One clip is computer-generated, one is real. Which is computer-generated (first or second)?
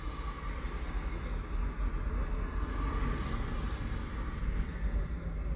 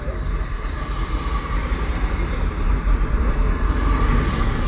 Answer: second